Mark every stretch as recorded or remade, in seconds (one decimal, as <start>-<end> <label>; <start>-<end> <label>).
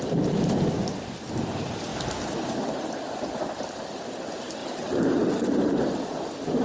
0.0-4.6 recorded; 4.6-5.1 remade; 5.1-6.6 recorded